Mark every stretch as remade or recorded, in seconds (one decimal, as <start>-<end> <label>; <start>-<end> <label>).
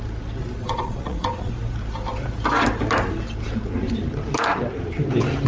0.0-0.6 recorded; 0.6-1.5 remade; 1.5-5.5 recorded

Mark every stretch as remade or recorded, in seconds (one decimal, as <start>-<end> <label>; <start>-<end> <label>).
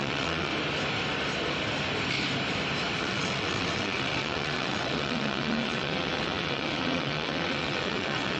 0.0-0.5 remade; 0.5-3.0 recorded; 3.0-8.4 remade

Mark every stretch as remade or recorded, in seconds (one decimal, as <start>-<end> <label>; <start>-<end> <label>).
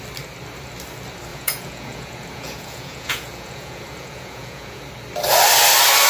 0.0-1.3 recorded; 1.3-4.8 remade; 4.8-6.1 recorded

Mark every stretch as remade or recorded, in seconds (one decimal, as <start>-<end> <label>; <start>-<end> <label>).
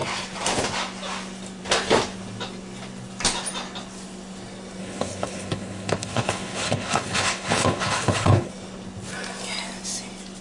0.0-4.8 recorded; 4.8-8.5 remade; 8.5-10.4 recorded